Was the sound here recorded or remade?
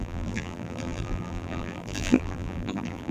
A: remade